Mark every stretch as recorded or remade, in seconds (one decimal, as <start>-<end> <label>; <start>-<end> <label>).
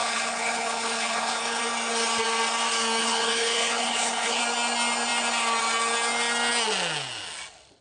0.0-1.6 remade; 1.6-3.0 recorded; 3.0-4.4 remade; 4.4-7.8 recorded